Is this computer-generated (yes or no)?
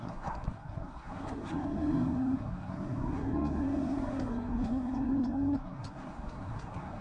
yes